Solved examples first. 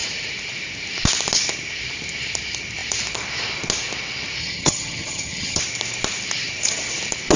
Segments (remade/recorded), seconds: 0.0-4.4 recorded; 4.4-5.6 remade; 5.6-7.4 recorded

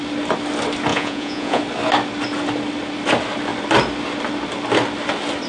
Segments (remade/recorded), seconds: 0.0-0.9 recorded; 0.9-1.6 remade; 1.6-5.5 recorded